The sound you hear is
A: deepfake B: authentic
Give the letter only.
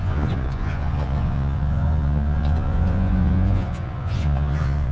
A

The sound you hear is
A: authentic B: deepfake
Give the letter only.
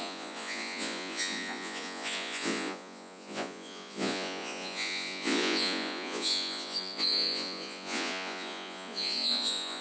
B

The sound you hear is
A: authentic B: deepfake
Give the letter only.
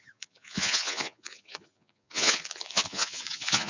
B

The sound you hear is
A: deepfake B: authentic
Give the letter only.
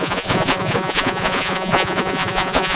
A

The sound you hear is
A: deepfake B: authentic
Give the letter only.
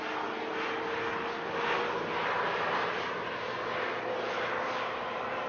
B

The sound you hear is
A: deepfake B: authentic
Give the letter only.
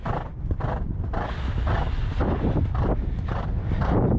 B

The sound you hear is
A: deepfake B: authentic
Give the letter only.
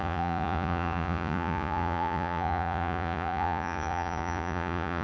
A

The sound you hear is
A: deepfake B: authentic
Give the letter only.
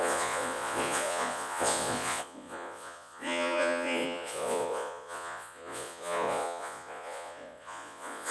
A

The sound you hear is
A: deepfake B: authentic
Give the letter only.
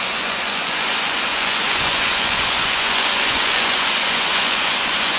A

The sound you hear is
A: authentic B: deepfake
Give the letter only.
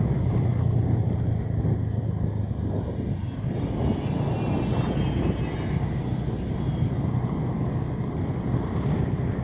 A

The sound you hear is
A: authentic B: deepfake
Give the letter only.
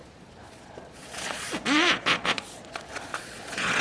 B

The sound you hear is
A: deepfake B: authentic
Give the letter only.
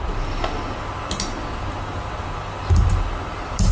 B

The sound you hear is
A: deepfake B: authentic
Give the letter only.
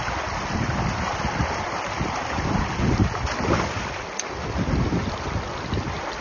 B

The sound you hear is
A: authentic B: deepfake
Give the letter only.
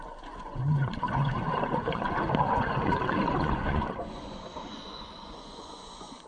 B